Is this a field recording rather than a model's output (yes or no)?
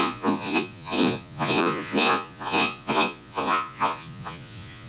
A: no